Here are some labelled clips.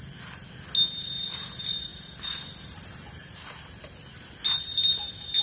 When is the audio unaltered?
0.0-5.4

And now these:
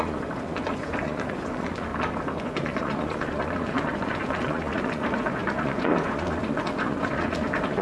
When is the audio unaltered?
1.9-2.4

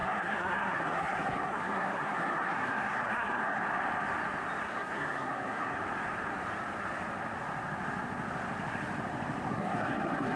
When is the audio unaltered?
3.6-4.6; 5.8-9.5